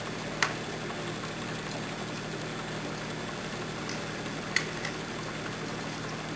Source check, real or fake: real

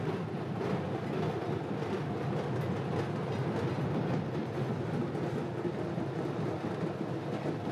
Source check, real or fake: real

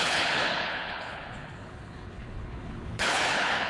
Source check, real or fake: fake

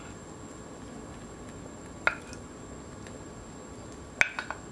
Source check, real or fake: real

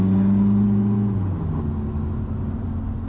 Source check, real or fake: real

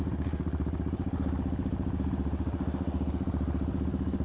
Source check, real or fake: real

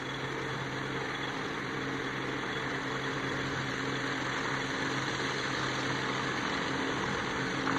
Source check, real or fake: real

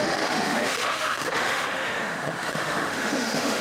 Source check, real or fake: fake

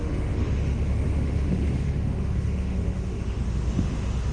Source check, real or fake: fake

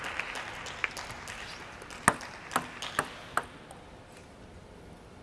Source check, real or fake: real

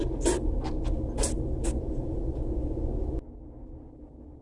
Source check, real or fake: real